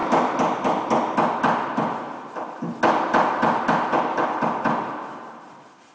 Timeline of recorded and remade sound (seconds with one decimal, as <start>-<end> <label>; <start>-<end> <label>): 0.0-5.9 recorded